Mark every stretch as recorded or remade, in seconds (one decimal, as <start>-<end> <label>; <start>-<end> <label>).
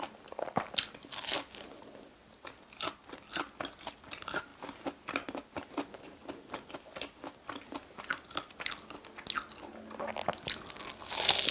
0.0-8.1 recorded; 8.1-9.1 remade; 9.1-11.5 recorded